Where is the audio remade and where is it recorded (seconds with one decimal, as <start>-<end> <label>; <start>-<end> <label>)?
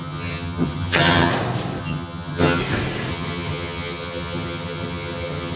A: 0.0-1.3 remade; 1.3-1.8 recorded; 1.8-2.6 remade; 2.6-3.1 recorded; 3.1-5.6 remade